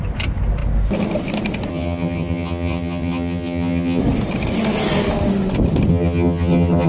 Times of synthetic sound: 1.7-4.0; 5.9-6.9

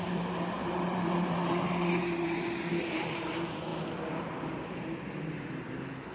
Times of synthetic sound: 0.0-3.7; 4.2-6.1

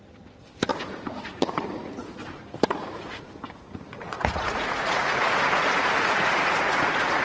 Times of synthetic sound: 0.7-2.4; 2.8-7.2

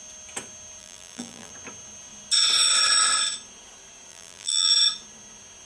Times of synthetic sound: 0.8-1.5; 4.1-4.7

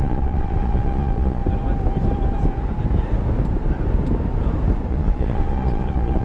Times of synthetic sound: 0.0-1.4; 4.9-6.2

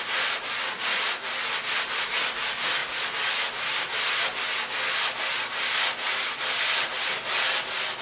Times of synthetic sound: none

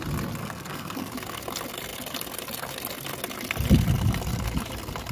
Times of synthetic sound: 0.4-1.1